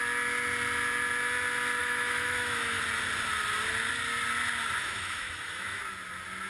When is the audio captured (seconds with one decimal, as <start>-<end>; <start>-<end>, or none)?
0.0-1.8; 2.8-4.8; 5.8-6.5